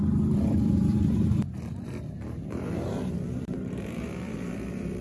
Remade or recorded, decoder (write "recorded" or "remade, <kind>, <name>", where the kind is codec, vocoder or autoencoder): remade, vocoder, BigVGAN v2